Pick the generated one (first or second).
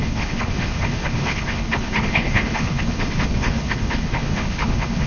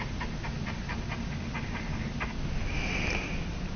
first